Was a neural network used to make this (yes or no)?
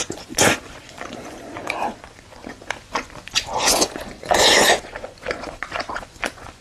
yes